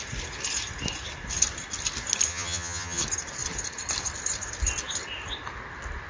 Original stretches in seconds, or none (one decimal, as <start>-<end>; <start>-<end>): 0.0-2.3; 3.0-6.1